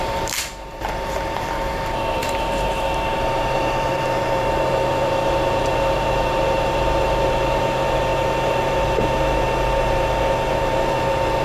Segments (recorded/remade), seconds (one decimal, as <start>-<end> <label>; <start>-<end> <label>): 0.0-11.4 remade